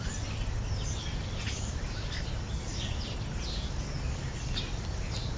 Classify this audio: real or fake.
real